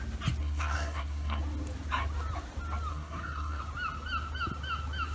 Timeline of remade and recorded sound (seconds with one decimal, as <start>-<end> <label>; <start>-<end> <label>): 0.0-0.4 recorded; 0.4-1.4 remade; 1.4-2.9 recorded; 2.9-3.6 remade; 3.6-5.1 recorded